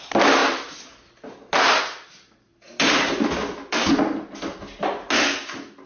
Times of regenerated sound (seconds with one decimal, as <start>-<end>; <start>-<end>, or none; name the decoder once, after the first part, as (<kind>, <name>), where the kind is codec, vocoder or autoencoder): none